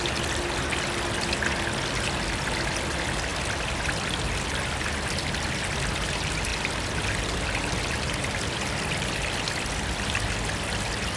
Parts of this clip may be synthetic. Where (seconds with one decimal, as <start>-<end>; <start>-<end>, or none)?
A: none

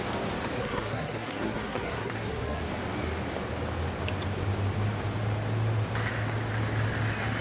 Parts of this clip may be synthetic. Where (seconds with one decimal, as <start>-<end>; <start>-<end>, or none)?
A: 0.6-2.6

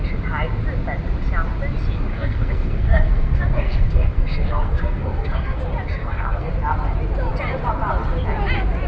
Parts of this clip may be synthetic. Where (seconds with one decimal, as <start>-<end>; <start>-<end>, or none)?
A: 2.1-5.6; 6.0-6.5

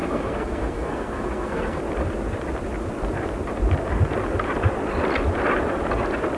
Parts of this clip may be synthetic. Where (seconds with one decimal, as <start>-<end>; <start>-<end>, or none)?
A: 0.0-1.8

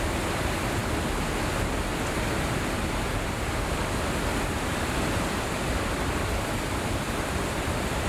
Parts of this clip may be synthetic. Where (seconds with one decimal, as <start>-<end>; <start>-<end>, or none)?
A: none

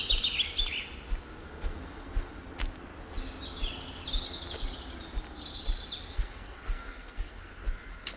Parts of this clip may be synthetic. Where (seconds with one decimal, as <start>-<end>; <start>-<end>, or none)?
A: 1.4-2.3; 6.1-7.5